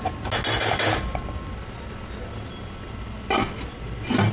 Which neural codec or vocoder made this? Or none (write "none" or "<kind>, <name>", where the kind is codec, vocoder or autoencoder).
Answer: none